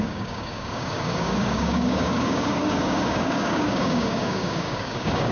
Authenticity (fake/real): fake